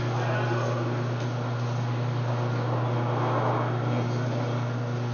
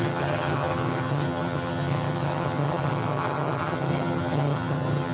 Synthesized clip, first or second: second